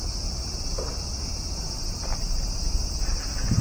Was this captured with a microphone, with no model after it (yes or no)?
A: yes